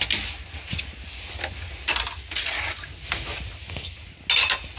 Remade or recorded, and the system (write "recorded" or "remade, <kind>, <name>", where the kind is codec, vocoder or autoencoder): recorded